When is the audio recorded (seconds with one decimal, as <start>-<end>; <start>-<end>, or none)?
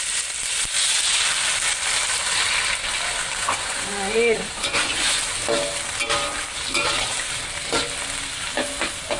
0.0-3.4; 5.2-9.2